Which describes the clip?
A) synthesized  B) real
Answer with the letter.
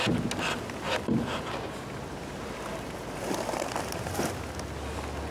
B